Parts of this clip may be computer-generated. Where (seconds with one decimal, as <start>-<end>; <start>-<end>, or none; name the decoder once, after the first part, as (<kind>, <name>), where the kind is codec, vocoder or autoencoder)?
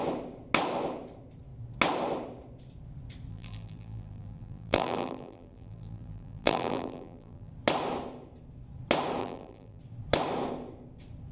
3.3-7.5 (vocoder, BigVGAN v2); 9.2-9.8